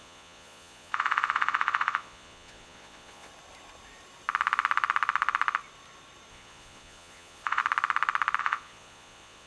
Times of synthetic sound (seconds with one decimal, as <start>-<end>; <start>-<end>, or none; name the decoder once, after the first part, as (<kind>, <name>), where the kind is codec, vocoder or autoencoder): 0.0-3.3 (vocoder, Vocos); 6.3-7.6; 8.4-9.5